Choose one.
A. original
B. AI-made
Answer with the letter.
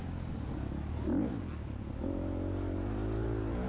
A